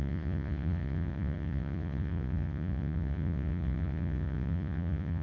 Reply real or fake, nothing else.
fake